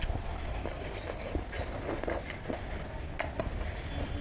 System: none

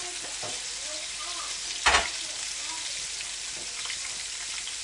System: none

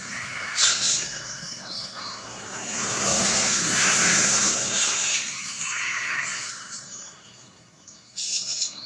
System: codec, SNAC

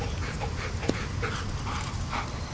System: none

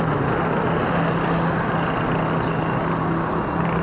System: none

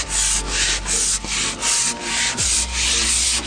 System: none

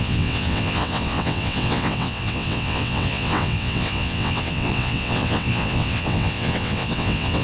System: vocoder, WaveNeXt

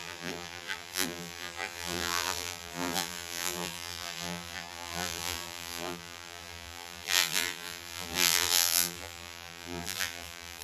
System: vocoder, BigVGAN v2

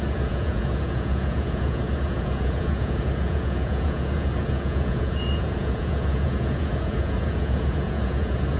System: vocoder, Vocos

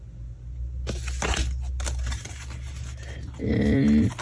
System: none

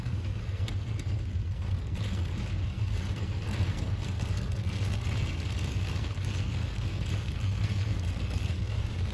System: codec, SNAC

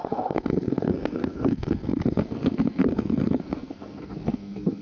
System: codec, SNAC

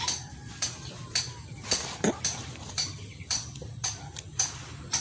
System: vocoder, BigVGAN v2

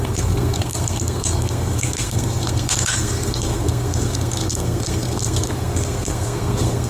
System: codec, SNAC